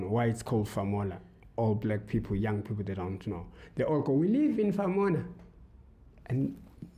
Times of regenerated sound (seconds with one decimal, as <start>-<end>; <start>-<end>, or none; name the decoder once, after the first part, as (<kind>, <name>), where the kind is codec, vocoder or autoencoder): none